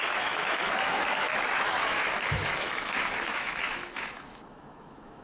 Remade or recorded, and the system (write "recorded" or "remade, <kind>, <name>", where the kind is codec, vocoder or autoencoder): remade, autoencoder, DAC-VAE